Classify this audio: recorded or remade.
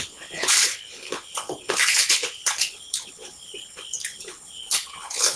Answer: remade